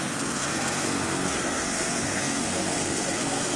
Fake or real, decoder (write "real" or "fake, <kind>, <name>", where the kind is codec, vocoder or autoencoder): fake, codec, SNAC